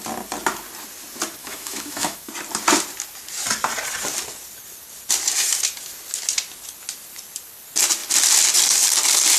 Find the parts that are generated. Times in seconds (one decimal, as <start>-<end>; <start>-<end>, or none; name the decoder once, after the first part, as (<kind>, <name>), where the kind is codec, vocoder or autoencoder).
1.4-2.3 (autoencoder, DAC-VAE)